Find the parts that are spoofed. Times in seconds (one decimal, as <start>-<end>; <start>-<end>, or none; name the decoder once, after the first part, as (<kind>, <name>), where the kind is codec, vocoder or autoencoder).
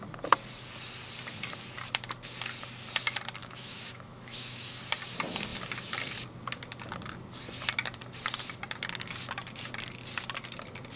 3.4-4.8 (autoencoder, DAC-VAE)